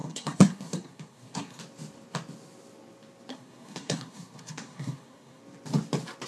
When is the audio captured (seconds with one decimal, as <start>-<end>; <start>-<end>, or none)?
1.6-3.3; 5.4-6.3